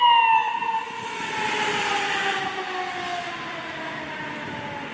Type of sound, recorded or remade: recorded